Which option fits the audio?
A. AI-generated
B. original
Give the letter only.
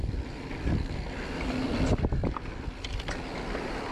B